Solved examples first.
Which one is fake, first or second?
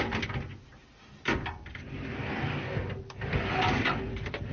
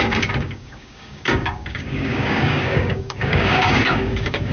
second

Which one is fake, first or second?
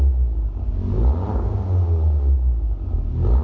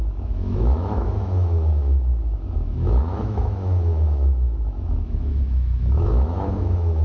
second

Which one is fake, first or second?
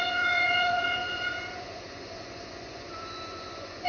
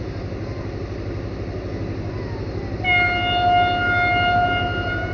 first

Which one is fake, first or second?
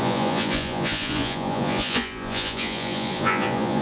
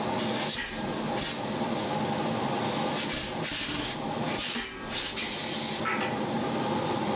first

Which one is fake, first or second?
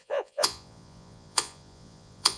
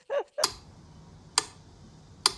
first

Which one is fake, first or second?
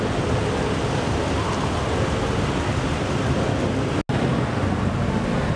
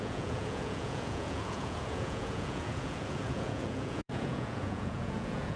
second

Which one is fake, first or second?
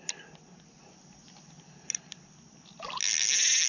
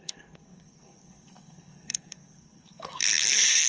second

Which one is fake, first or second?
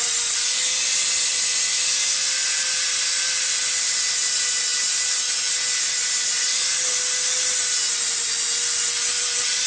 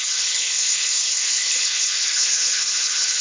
second